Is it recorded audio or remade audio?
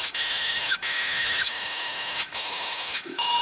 remade